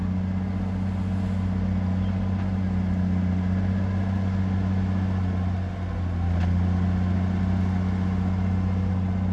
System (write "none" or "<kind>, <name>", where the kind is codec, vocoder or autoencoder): none